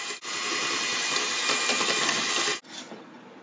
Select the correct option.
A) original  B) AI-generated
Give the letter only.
A